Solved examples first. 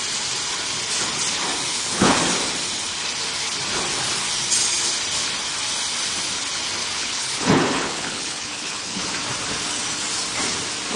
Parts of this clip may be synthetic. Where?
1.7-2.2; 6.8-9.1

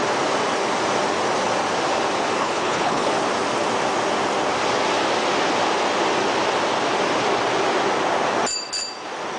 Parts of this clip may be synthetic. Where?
2.4-3.1